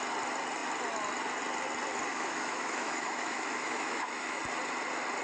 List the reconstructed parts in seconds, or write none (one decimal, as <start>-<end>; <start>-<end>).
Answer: 2.1-4.4